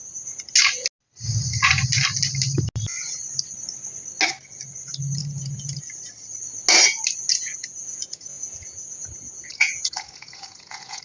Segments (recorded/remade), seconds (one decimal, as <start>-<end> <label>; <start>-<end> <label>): 0.0-5.2 recorded; 5.2-5.8 remade; 5.8-7.3 recorded; 7.3-11.0 remade